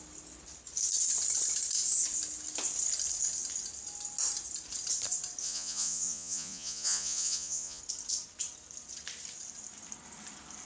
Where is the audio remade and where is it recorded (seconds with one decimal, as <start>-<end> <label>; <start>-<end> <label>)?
0.0-5.4 recorded; 5.4-7.8 remade; 7.8-10.7 recorded